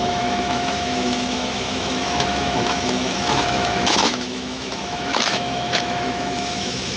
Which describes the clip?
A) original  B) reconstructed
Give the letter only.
B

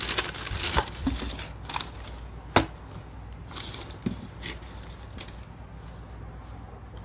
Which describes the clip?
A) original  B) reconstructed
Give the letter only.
A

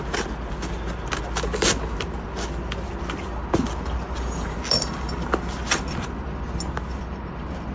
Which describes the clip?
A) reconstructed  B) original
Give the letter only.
B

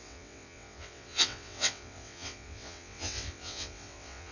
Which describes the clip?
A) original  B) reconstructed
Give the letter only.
B